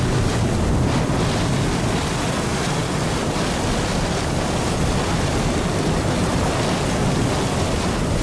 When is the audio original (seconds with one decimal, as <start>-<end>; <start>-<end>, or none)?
0.0-8.2